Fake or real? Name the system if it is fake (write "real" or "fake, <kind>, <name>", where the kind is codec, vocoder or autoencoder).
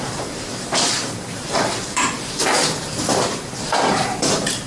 fake, vocoder, BigVGAN v2